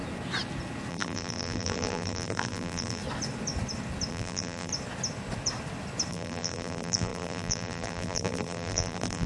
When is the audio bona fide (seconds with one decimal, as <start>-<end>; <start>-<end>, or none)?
0.0-0.9; 3.0-4.1; 4.7-6.1